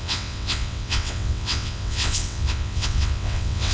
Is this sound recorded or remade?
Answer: remade